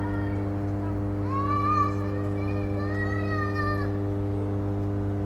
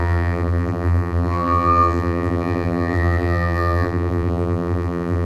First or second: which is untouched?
first